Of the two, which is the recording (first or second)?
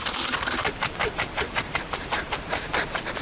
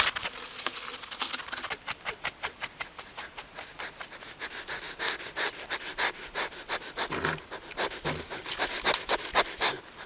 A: second